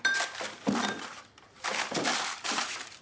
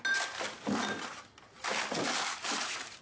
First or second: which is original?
second